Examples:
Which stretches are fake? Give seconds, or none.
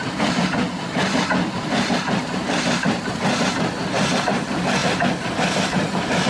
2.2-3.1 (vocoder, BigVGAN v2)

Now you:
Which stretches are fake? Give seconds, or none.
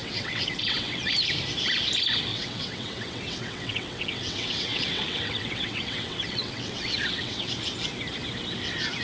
0.0-1.1 (vocoder, WaveNeXt); 2.3-7.5